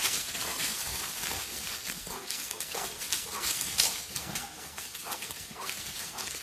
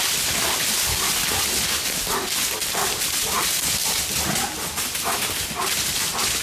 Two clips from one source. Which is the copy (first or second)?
first